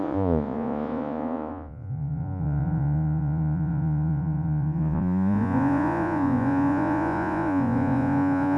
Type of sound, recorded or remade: remade